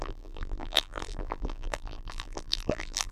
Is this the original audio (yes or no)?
no